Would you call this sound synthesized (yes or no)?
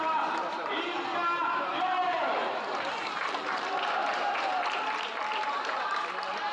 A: yes